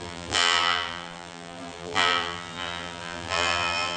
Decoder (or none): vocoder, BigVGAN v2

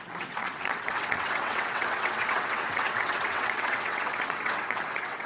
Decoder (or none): vocoder, WaveNeXt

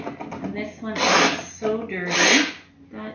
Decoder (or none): none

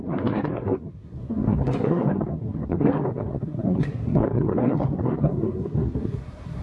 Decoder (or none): codec, SNAC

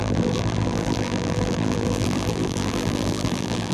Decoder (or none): vocoder, BigVGAN v2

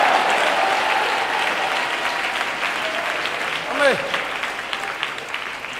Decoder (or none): none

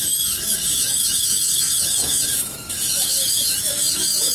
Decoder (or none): autoencoder, DAC-VAE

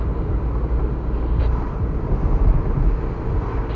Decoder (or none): none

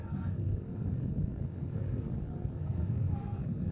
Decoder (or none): codec, SNAC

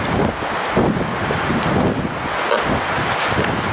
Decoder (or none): none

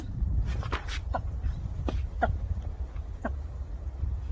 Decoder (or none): vocoder, BigVGAN v2